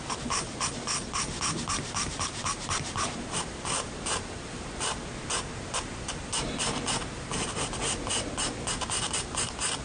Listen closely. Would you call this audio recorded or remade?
recorded